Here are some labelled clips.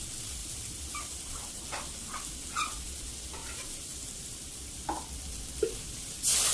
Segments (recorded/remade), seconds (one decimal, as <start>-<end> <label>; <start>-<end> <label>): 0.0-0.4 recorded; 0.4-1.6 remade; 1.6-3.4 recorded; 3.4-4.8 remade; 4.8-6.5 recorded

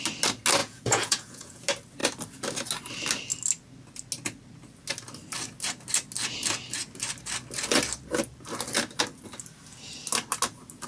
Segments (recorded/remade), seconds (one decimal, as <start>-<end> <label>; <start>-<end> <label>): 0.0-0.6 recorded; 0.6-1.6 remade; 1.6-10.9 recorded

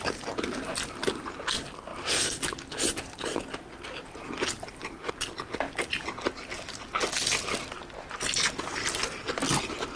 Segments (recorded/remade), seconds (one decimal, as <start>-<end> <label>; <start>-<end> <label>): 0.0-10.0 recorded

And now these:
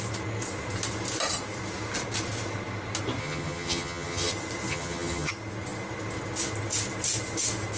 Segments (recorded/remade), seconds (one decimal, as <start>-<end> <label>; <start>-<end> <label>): 0.0-3.2 recorded; 3.2-4.3 remade; 4.3-4.7 recorded; 4.7-5.3 remade; 5.3-7.8 recorded

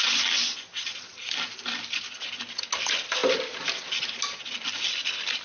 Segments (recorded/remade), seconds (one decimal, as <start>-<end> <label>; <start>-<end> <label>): 0.0-5.4 recorded